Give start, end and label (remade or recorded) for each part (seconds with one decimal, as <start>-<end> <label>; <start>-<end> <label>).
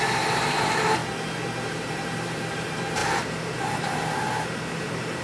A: 0.0-1.0 remade; 1.0-1.6 recorded; 1.6-5.2 remade